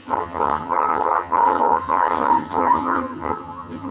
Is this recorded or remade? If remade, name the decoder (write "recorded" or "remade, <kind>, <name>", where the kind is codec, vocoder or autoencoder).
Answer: remade, vocoder, HiFi-GAN